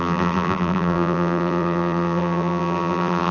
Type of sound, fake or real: fake